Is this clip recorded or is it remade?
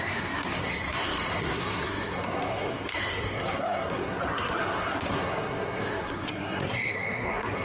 remade